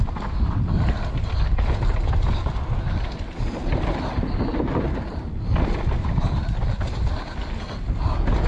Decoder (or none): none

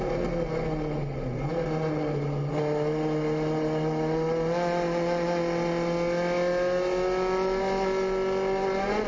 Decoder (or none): none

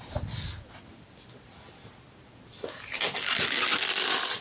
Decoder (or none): none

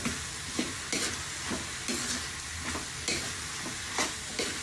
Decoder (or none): none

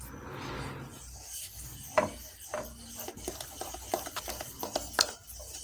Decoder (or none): none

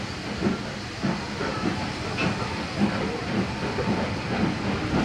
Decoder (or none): none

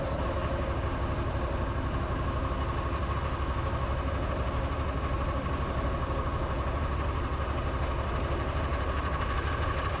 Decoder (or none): none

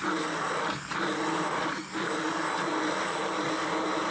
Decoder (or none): none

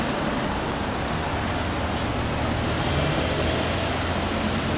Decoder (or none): none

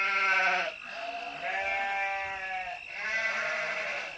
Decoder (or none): none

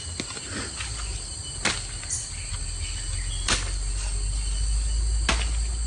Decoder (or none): none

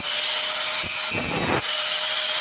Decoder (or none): none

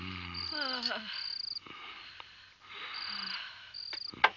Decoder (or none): none